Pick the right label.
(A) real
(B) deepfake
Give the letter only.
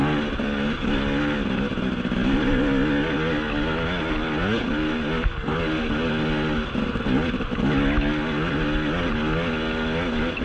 A